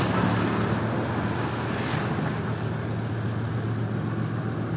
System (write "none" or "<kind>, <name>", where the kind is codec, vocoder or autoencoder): none